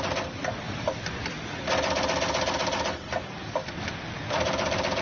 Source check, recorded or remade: recorded